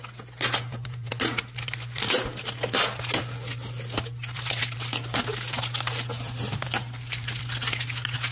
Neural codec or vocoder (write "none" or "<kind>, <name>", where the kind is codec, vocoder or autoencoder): none